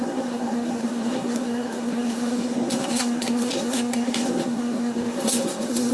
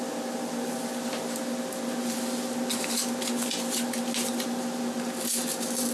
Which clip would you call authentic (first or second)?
second